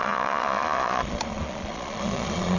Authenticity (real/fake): fake